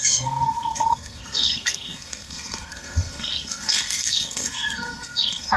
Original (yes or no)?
no